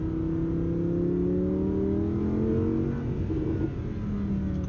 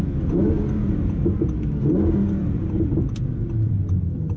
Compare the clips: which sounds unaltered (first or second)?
first